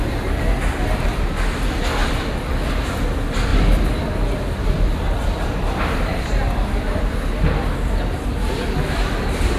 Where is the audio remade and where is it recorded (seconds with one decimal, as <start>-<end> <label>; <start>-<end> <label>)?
0.0-2.0 recorded; 2.0-2.9 remade; 2.9-3.5 recorded; 3.5-8.6 remade; 8.6-9.6 recorded